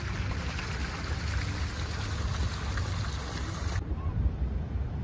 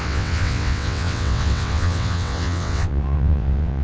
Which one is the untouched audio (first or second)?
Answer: first